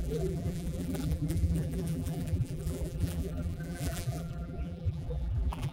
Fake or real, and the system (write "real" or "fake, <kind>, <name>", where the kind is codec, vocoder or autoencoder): fake, vocoder, BigVGAN v2